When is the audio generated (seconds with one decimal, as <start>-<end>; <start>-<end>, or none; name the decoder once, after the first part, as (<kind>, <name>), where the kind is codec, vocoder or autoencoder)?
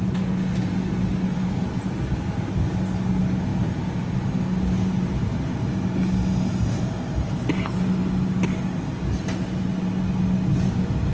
none